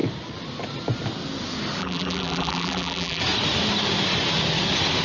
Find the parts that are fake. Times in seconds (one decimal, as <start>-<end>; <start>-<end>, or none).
1.8-3.2